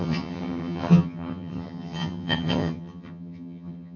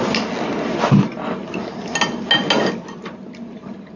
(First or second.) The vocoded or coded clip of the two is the first